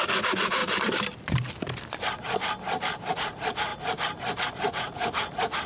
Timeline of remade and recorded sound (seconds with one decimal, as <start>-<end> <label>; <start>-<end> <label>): 0.0-0.6 remade; 0.6-3.1 recorded; 3.1-3.7 remade; 3.7-4.5 recorded; 4.5-5.7 remade